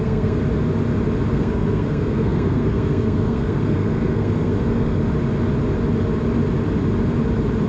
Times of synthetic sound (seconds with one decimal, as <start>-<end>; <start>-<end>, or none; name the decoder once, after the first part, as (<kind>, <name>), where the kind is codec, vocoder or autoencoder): 0.0-0.4 (codec, SNAC); 1.3-5.0